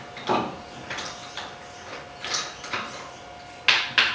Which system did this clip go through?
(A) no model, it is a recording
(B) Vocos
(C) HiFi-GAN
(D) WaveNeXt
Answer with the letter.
A